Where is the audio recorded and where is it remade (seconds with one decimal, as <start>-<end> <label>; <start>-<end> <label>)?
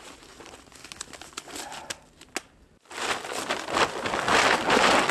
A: 0.0-5.1 recorded